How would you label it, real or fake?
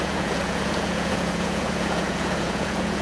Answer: fake